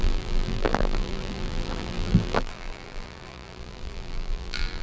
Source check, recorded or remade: remade